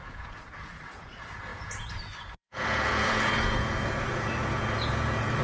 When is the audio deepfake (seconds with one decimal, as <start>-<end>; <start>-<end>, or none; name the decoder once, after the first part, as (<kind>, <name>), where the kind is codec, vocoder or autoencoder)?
0.0-5.4 (vocoder, Vocos)